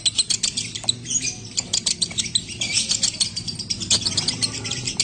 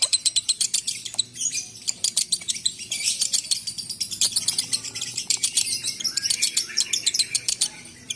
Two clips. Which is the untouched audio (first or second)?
first